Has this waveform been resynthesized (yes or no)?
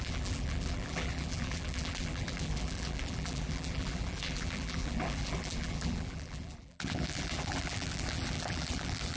yes